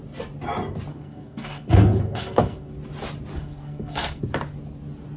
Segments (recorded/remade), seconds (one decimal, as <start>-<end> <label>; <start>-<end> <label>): 0.0-0.9 recorded; 0.9-2.7 remade; 2.7-3.3 recorded; 3.3-4.2 remade; 4.2-5.2 recorded